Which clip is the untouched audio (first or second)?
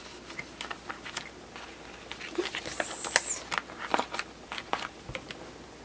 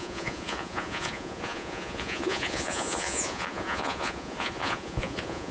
first